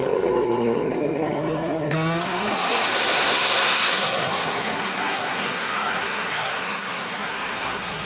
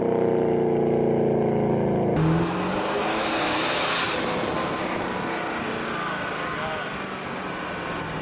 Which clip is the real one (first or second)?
second